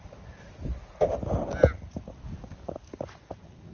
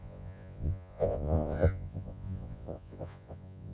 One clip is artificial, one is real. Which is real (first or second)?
first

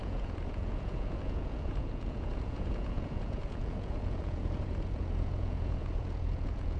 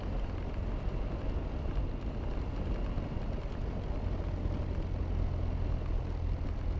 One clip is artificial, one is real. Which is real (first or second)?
second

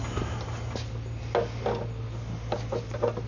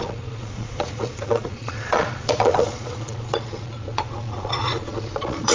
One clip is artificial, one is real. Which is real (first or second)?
first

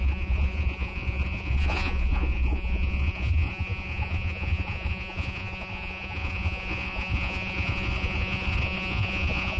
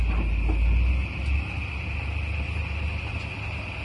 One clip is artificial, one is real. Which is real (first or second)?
second